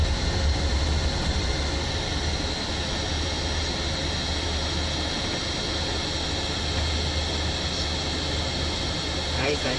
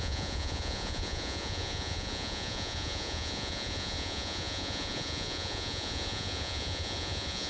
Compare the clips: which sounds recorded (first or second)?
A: first